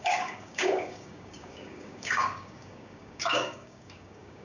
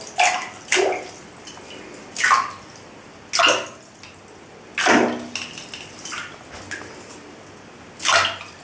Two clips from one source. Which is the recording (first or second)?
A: second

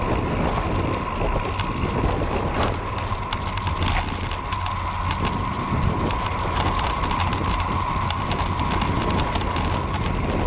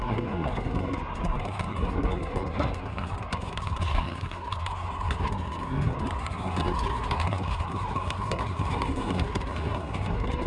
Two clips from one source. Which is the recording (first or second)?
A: first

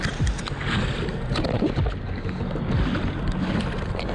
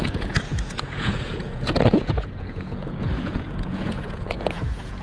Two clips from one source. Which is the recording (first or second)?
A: first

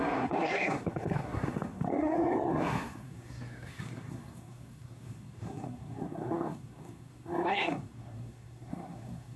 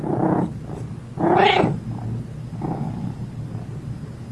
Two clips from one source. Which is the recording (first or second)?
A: second